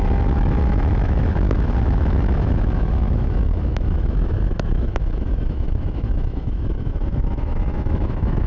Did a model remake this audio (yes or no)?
yes